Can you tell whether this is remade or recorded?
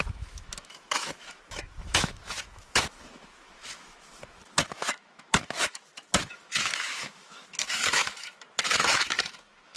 remade